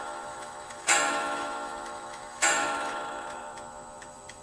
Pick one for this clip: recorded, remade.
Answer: remade